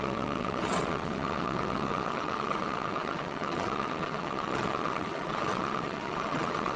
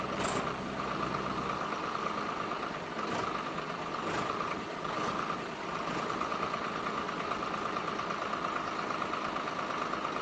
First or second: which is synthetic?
first